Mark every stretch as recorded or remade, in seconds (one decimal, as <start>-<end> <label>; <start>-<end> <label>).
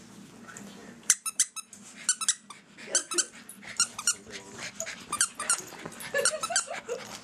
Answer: 0.0-0.8 recorded; 0.8-1.5 remade; 1.5-3.0 recorded; 3.0-6.3 remade; 6.3-7.2 recorded